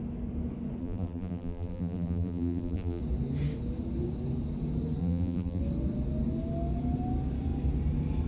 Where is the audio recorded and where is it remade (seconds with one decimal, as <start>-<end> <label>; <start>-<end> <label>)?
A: 0.0-0.8 recorded; 0.8-3.0 remade; 3.0-5.0 recorded; 5.0-5.6 remade; 5.6-8.3 recorded